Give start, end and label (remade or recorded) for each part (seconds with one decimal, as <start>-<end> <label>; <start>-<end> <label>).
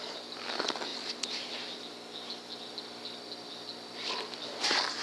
0.0-5.0 recorded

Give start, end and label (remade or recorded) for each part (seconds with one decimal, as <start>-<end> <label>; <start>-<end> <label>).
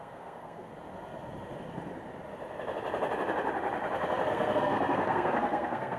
0.0-0.7 remade; 0.7-4.3 recorded; 4.3-6.0 remade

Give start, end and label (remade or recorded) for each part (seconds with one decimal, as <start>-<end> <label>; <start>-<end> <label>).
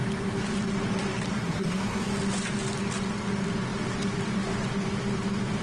0.0-1.3 recorded; 1.3-2.1 remade; 2.1-5.6 recorded